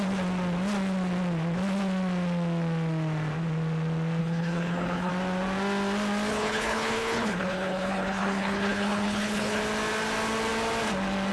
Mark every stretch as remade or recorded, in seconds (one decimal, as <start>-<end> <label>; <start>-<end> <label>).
0.0-4.2 recorded; 4.2-5.1 remade; 5.1-6.3 recorded; 6.3-9.6 remade; 9.6-11.3 recorded